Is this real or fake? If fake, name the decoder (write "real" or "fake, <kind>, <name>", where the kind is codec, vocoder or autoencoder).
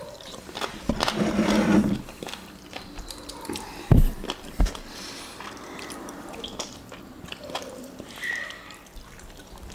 fake, vocoder, BigVGAN v2